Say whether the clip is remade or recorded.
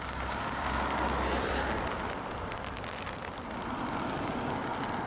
remade